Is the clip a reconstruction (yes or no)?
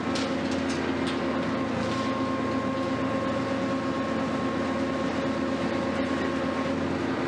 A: no